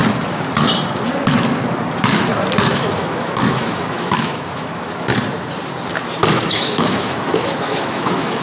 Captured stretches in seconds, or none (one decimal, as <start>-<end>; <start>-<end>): 0.0-2.7; 5.1-6.3